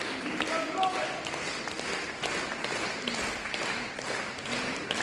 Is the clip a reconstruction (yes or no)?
no